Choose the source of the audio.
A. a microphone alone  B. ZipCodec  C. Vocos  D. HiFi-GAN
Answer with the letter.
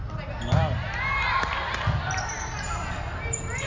A